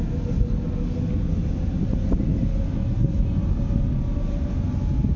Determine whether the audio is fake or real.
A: real